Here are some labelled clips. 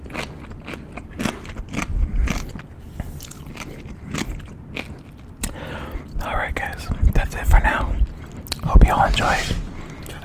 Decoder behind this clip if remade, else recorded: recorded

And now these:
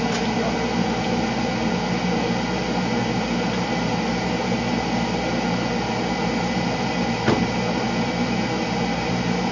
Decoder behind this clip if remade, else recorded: recorded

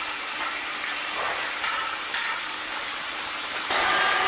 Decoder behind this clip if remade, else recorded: remade, vocoder, BigVGAN v2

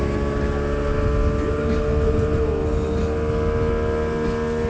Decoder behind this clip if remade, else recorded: recorded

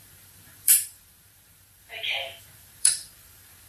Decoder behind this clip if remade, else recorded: remade, vocoder, BigVGAN v2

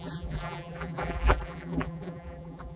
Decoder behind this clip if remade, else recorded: remade, vocoder, BigVGAN v2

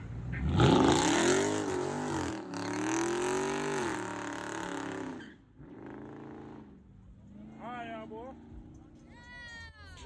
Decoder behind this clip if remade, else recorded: recorded